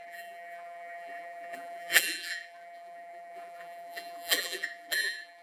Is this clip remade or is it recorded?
remade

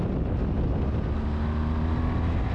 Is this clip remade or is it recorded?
recorded